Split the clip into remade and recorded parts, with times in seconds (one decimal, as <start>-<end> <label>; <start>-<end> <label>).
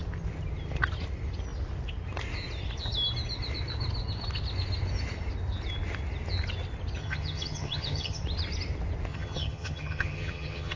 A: 0.0-7.0 recorded; 7.0-8.2 remade; 8.2-9.1 recorded; 9.1-10.8 remade